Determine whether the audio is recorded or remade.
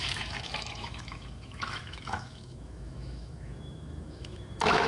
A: remade